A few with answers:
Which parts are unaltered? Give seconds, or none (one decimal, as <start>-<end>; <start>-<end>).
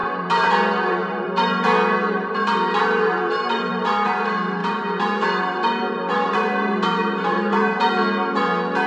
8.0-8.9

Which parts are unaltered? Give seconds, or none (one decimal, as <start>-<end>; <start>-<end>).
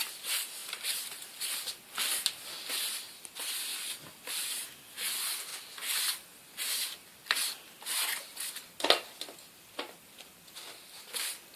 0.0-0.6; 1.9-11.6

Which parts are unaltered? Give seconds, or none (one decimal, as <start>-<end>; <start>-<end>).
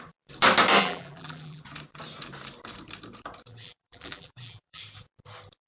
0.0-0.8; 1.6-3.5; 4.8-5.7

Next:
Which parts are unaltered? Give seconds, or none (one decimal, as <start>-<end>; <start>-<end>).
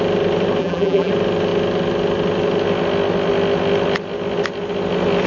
0.0-0.6; 1.1-5.3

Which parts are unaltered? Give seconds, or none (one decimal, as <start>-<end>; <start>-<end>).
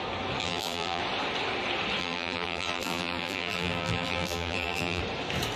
0.0-0.4; 1.0-2.0; 5.0-5.6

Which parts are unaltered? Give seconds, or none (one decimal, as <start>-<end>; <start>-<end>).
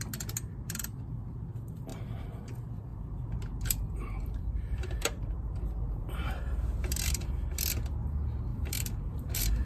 0.0-1.9; 2.4-2.9; 7.3-8.5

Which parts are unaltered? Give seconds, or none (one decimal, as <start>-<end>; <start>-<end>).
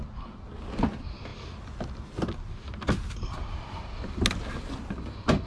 0.0-5.5